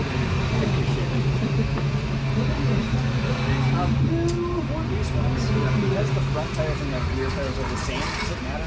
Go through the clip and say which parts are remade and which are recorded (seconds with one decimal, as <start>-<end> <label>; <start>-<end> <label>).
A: 0.0-8.7 recorded